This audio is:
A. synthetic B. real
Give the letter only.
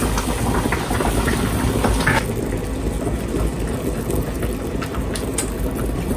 B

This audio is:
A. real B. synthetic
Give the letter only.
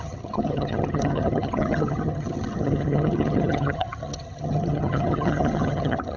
B